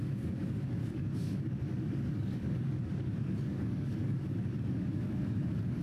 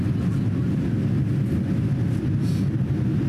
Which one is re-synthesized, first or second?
first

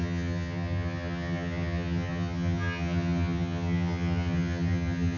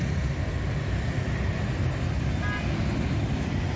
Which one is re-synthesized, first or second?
first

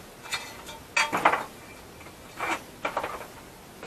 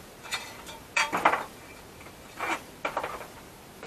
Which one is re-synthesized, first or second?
second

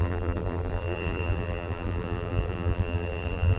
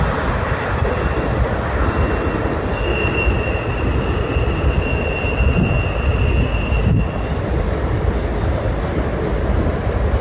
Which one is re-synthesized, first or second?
first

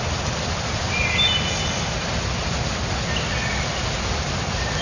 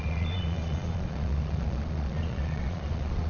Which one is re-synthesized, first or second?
second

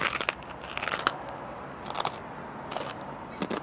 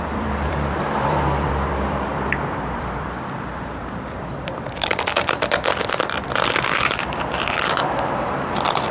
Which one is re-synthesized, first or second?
second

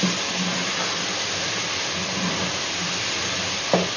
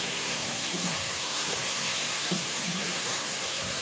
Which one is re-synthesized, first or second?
second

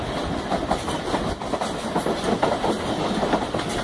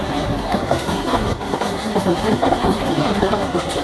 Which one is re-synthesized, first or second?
second